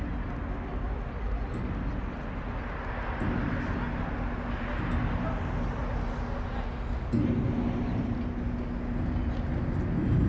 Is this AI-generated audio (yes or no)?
no